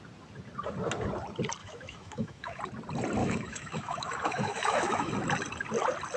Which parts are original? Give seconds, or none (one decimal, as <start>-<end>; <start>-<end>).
0.0-1.6; 2.6-3.2; 5.1-6.2